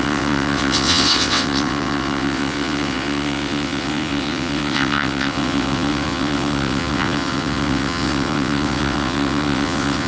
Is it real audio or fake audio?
fake